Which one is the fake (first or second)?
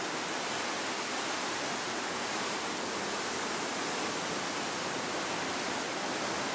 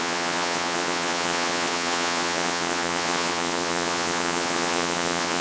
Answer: second